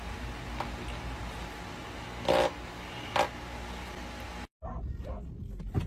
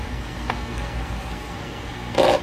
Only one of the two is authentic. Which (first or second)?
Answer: first